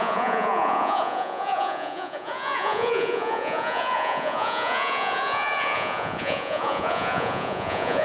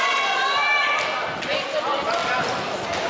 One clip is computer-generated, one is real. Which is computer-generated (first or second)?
first